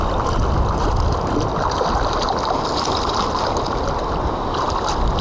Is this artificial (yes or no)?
no